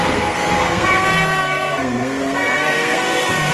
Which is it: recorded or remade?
remade